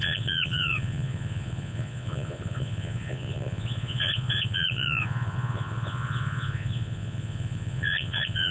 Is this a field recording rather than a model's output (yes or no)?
no